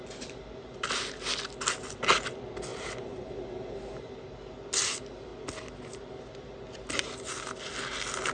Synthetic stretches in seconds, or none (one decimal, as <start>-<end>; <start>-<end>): none